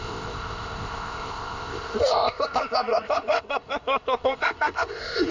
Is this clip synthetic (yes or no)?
yes